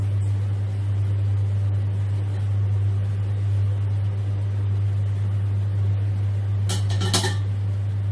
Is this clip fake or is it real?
real